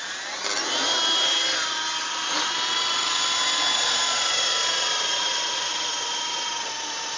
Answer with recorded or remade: recorded